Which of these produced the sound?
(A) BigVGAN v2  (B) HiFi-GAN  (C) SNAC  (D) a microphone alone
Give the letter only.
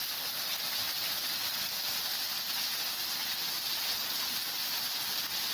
D